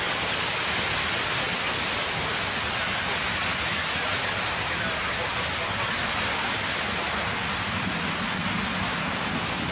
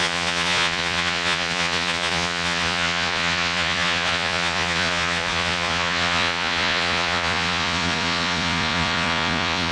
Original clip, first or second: first